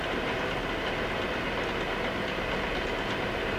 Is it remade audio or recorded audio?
recorded